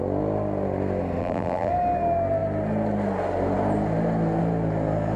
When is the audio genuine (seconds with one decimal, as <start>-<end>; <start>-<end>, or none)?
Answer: 0.0-1.2; 1.7-5.2